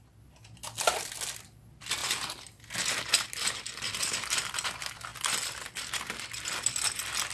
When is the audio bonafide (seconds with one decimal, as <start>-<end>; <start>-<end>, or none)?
0.0-7.3